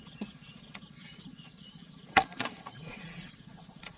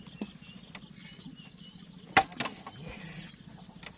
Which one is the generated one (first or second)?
first